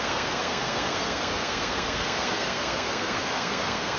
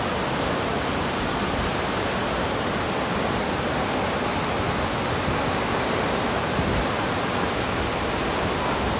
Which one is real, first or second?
second